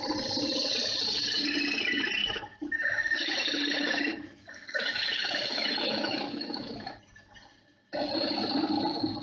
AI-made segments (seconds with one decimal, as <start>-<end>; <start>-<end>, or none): 2.2-7.0